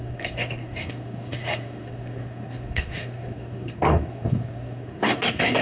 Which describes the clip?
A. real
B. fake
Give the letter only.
B